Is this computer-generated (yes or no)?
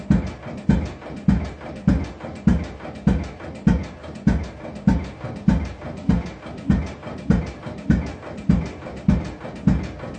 no